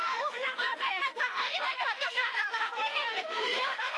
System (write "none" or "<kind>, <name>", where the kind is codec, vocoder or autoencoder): autoencoder, DAC-VAE